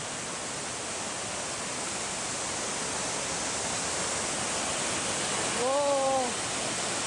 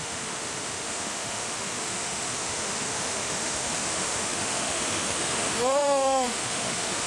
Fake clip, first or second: second